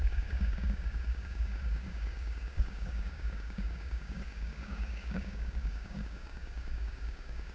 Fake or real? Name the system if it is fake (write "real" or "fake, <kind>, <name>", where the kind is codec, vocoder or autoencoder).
fake, codec, DAC